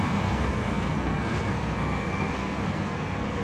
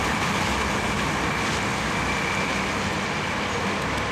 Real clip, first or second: second